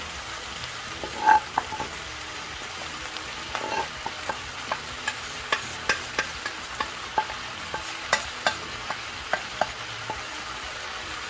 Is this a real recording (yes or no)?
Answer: yes